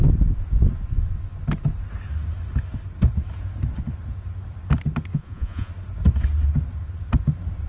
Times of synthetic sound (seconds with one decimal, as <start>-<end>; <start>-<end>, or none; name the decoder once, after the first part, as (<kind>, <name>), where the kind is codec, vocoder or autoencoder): 5.1-5.7 (vocoder, Vocos)

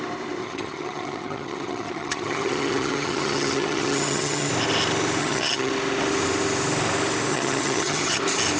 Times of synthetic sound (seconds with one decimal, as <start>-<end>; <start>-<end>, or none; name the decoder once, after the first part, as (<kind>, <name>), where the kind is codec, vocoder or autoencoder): 0.4-4.5 (vocoder, HiFi-GAN); 5.2-5.7; 7.3-8.2